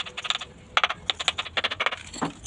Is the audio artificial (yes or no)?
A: no